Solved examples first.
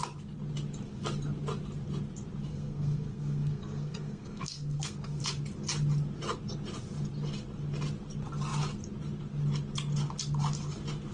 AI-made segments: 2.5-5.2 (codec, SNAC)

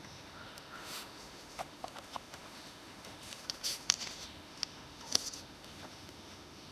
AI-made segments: 0.0-6.7 (autoencoder, DAC-VAE)

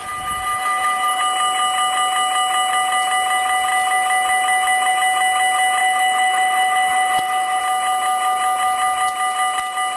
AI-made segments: 0.0-1.2 (autoencoder, DAC-VAE); 5.8-7.6

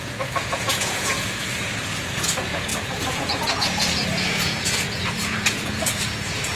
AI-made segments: 0.0-6.6 (vocoder, Vocos)

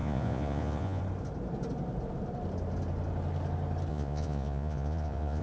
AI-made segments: 0.0-1.0 (vocoder, Vocos); 3.9-5.4

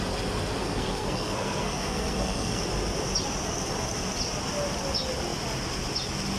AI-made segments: 0.6-2.6 (codec, SNAC)

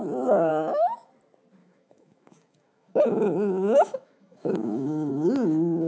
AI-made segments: 0.5-1.1 (autoencoder, DAC-VAE); 1.6-5.1